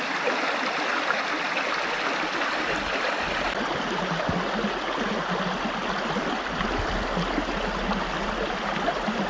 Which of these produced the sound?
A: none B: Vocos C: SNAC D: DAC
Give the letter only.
A